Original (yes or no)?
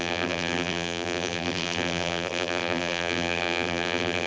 no